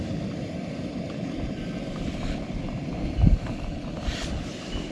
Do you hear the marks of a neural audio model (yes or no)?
yes